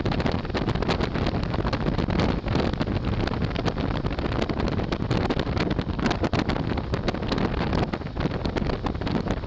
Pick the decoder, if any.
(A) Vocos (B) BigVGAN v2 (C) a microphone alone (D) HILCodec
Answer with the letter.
C